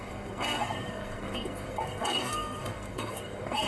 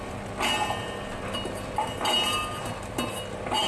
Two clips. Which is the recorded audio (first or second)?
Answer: second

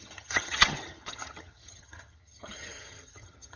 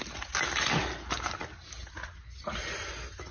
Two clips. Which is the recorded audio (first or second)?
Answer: second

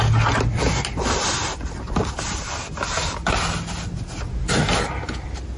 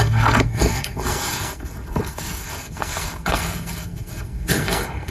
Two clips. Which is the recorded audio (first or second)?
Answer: first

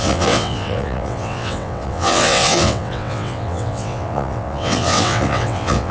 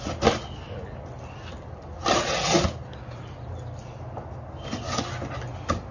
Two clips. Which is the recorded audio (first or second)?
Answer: second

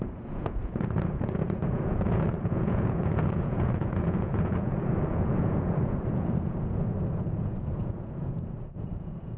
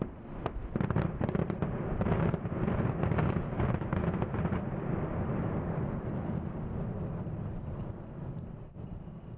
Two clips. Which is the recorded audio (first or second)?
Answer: second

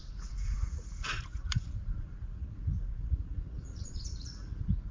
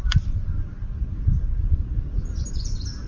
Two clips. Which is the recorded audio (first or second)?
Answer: second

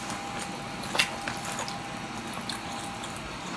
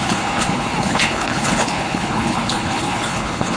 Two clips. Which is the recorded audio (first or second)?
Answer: first